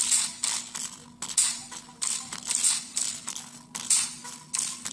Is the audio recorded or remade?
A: recorded